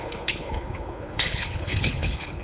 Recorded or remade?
remade